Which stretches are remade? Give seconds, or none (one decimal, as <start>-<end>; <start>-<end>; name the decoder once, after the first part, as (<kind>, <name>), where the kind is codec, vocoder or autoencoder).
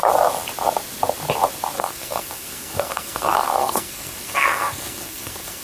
1.8-5.6 (codec, SNAC)